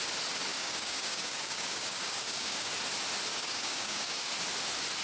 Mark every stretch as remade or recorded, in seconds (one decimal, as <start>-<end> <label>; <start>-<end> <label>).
0.0-0.5 recorded; 0.5-2.7 remade; 2.7-3.3 recorded; 3.3-4.3 remade; 4.3-5.0 recorded